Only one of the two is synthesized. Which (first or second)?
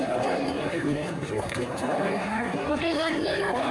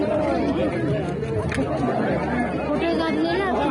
first